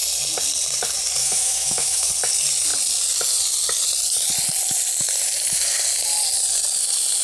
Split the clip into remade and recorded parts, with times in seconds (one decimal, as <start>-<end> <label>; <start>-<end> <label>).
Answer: 0.0-1.2 recorded; 1.2-2.1 remade; 2.1-7.2 recorded